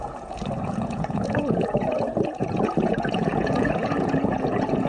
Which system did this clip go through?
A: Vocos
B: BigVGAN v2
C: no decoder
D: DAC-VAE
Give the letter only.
A